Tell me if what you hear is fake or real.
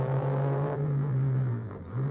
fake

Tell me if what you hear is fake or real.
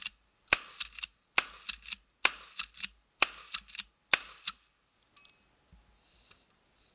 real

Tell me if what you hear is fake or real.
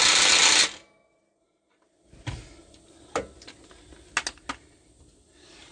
real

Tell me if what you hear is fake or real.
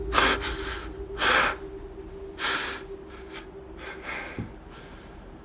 real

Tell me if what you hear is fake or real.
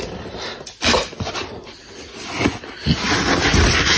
real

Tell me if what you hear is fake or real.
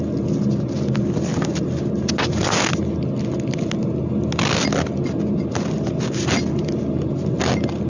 real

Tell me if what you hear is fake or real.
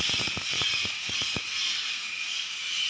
fake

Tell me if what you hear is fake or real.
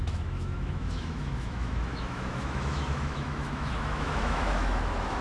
fake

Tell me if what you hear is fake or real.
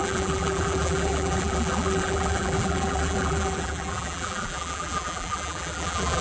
fake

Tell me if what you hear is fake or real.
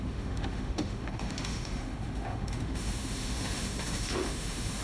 fake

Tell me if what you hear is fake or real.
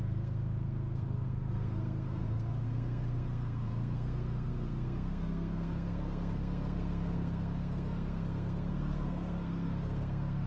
fake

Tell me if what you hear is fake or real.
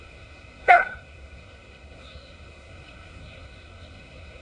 fake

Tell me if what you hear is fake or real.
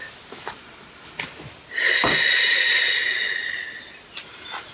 real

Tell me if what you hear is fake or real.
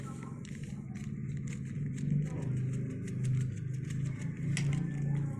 real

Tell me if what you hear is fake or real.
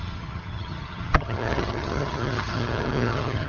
fake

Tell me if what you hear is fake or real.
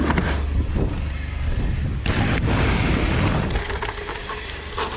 real